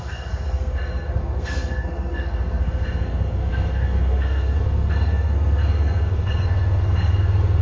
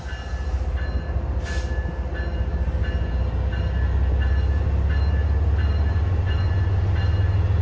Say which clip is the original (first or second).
second